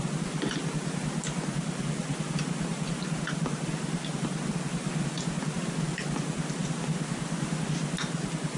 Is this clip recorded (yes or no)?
yes